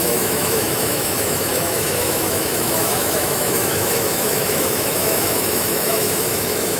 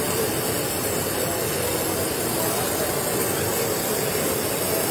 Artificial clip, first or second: first